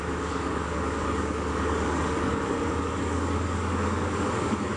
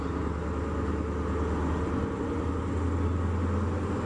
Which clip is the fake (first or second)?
first